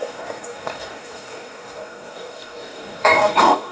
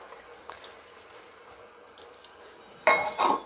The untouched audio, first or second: second